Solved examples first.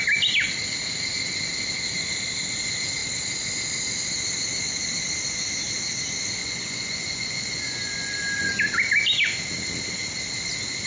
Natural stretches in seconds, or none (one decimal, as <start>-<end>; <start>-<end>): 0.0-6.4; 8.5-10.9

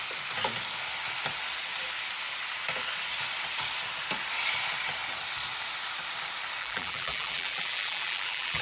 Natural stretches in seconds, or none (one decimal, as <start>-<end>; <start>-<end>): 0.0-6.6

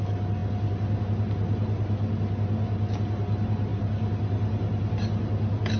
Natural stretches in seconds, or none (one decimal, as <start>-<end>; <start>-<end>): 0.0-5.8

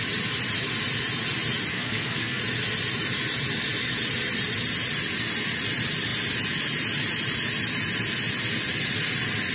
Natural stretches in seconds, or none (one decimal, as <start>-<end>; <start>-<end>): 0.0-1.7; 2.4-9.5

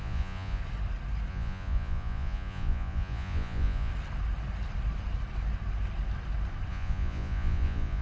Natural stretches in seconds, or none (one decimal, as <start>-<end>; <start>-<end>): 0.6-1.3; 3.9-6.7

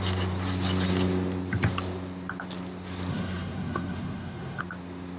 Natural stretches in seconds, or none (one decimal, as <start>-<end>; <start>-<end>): 0.0-3.1; 4.6-5.2

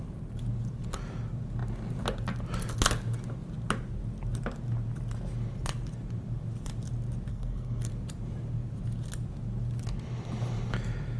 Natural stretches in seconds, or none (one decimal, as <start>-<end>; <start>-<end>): 0.0-7.3; 7.9-11.2